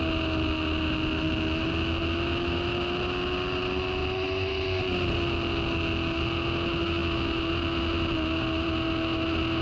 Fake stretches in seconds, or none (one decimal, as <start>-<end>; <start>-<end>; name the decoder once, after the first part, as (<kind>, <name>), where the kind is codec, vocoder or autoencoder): none